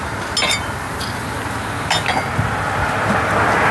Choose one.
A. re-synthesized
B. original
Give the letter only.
B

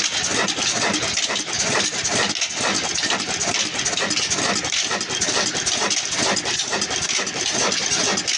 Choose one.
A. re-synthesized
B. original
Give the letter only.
B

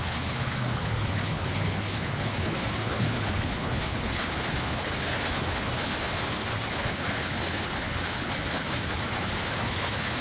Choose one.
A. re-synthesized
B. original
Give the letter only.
A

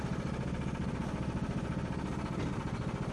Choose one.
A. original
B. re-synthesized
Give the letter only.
A